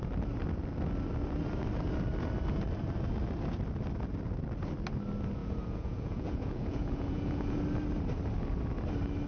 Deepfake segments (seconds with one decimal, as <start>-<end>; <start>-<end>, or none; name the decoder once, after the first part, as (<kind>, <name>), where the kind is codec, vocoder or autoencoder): 5.4-7.6 (vocoder, Vocos)

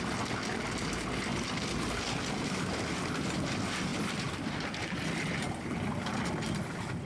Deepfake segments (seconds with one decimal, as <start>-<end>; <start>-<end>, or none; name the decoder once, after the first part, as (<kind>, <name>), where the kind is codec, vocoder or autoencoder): none

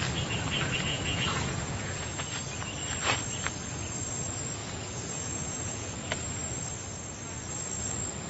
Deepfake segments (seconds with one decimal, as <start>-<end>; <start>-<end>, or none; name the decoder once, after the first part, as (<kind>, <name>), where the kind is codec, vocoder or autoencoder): 0.9-2.3 (vocoder, Vocos); 4.6-5.9

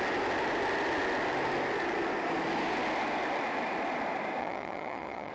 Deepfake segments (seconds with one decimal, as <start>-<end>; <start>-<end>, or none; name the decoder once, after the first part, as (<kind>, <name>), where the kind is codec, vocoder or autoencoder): 4.4-5.3 (vocoder, HiFi-GAN)

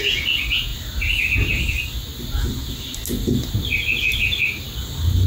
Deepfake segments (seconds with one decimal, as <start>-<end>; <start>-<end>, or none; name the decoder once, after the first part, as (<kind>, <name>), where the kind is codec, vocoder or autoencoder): none

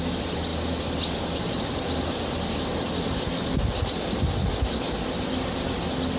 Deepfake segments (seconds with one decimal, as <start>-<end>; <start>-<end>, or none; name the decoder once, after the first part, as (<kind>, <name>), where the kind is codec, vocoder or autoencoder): none

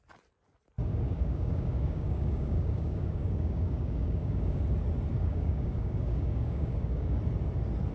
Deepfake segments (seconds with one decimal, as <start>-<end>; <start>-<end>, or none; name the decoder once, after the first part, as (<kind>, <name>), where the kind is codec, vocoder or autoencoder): 0.9-4.6 (codec, DAC); 5.1-7.2